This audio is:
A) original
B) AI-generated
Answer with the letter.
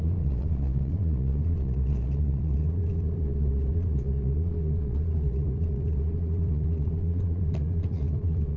B